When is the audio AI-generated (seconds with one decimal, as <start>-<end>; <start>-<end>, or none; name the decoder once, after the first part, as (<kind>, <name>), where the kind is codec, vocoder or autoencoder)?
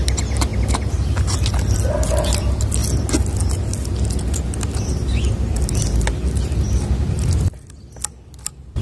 0.5-1.9 (vocoder, BigVGAN v2)